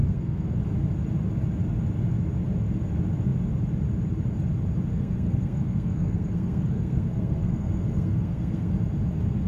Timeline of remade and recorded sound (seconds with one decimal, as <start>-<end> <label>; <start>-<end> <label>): 0.0-0.6 remade; 0.6-4.9 recorded; 4.9-8.7 remade; 8.7-9.5 recorded